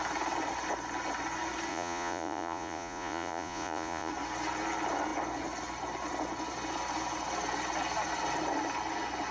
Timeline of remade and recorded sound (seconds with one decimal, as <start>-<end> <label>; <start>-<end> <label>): 0.0-1.7 recorded; 1.7-4.1 remade; 4.1-9.3 recorded